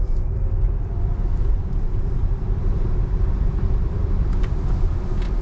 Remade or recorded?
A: remade